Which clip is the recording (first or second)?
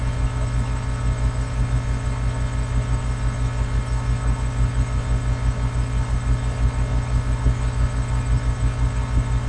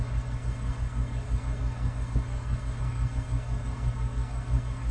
first